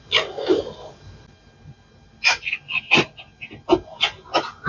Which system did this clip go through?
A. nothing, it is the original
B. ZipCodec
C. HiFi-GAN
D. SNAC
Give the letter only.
A